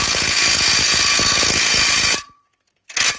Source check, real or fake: fake